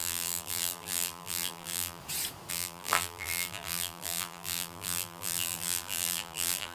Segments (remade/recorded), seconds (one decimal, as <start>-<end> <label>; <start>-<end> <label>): 0.0-2.0 remade; 2.0-2.5 recorded; 2.5-6.7 remade